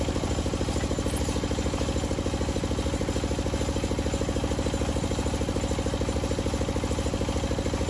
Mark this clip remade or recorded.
recorded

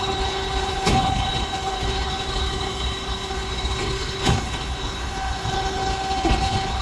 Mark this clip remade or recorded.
remade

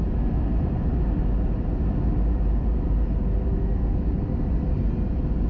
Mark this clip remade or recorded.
recorded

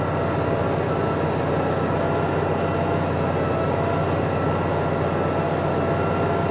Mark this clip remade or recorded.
recorded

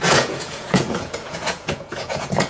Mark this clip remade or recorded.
remade